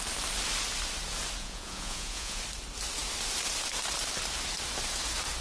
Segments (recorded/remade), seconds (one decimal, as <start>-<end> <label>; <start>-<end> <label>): 0.0-1.4 recorded; 1.4-2.4 remade; 2.4-5.4 recorded